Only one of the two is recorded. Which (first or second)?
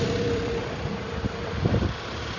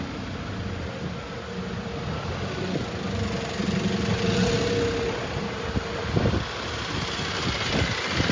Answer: second